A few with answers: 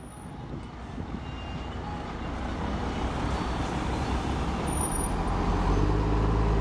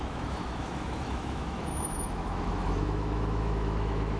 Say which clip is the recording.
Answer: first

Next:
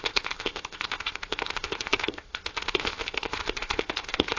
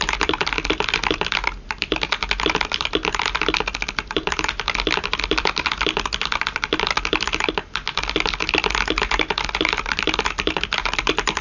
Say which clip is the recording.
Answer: second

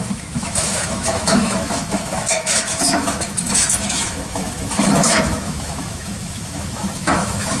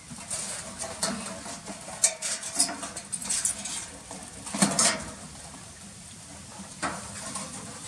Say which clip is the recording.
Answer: second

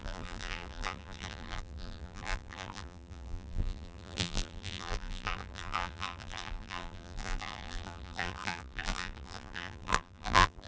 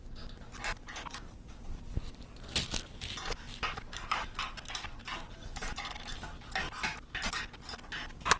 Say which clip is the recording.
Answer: second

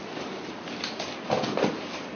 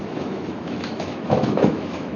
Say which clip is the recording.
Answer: first